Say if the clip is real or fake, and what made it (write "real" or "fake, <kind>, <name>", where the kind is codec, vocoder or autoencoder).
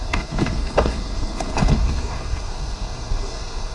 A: fake, codec, SNAC